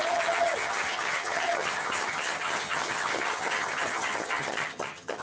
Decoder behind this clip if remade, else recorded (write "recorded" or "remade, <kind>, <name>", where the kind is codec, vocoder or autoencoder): remade, vocoder, HiFi-GAN